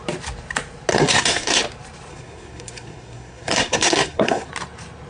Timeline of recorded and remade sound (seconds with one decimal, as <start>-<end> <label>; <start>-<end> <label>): 0.0-0.9 recorded; 0.9-1.6 remade; 1.6-2.1 recorded; 2.1-4.5 remade; 4.5-5.1 recorded